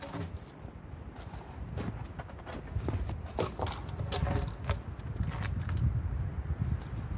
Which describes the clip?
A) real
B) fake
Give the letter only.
A